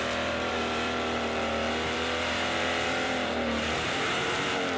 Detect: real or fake fake